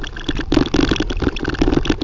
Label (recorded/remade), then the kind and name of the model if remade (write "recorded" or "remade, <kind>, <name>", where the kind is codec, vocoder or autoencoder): recorded